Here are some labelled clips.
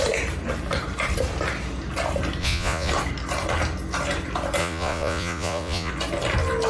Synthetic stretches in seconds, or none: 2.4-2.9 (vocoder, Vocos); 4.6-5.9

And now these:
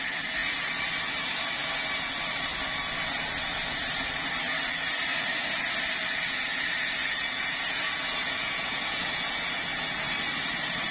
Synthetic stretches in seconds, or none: 7.0-10.1 (vocoder, Vocos)